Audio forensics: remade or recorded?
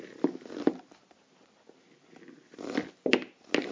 recorded